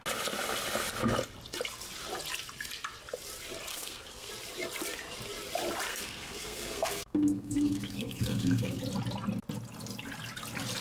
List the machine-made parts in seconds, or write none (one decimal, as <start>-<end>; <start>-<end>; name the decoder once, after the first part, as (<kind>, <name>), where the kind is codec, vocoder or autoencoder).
3.7-4.3 (codec, SNAC); 5.9-8.8

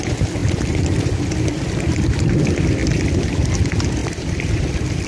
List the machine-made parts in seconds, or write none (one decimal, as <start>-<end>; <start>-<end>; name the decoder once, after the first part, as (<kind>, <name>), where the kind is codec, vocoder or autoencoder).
0.4-2.2 (vocoder, BigVGAN v2); 2.8-3.5; 4.0-5.1

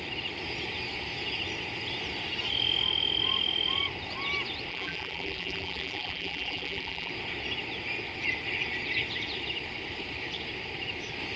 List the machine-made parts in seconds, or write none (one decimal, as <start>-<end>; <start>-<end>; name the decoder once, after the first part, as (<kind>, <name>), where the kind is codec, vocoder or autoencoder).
4.7-7.1 (vocoder, BigVGAN v2)

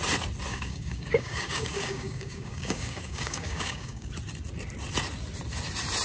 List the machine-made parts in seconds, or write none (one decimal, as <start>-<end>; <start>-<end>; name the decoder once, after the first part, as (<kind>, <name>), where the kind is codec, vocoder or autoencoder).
0.5-4.1 (codec, DAC)

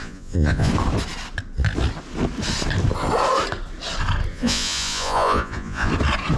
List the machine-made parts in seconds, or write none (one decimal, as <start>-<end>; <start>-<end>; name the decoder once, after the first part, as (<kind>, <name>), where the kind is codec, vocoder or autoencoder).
0.0-0.7 (vocoder, Vocos); 4.3-5.9

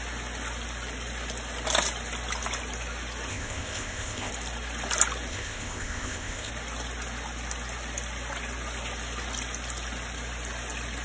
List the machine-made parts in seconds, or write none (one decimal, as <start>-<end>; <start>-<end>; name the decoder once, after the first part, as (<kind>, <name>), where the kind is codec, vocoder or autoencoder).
3.3-4.3 (codec, ZipCodec); 5.3-6.5

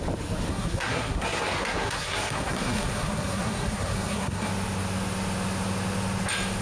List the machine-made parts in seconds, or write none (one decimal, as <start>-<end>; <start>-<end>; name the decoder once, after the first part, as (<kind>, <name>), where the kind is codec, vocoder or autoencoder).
0.5-4.5 (codec, SNAC)

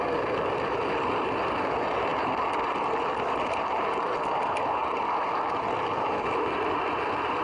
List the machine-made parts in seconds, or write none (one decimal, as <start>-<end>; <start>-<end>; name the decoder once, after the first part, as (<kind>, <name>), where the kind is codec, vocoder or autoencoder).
none